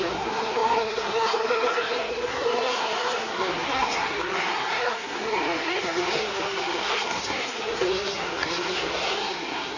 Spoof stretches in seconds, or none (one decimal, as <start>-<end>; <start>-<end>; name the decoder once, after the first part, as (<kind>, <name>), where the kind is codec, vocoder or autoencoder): 0.0-9.8 (codec, SNAC)